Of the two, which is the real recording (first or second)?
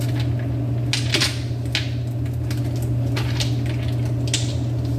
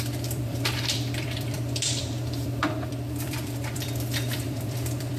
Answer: first